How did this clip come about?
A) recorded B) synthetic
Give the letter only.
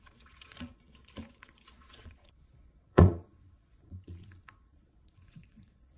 B